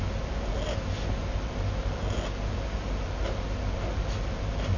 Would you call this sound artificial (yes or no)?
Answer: no